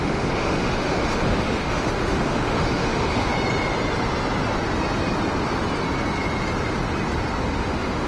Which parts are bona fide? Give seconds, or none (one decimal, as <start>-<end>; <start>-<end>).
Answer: 3.3-7.4